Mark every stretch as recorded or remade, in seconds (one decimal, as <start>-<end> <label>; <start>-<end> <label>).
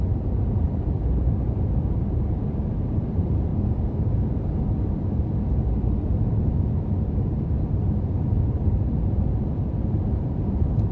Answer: 0.0-3.5 remade; 3.5-7.0 recorded; 7.0-10.9 remade